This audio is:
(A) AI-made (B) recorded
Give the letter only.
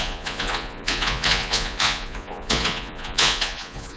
A